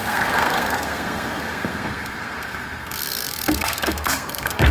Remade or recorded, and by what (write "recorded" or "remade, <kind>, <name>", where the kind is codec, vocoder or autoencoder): remade, codec, SNAC